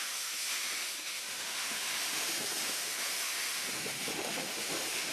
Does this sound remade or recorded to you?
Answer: remade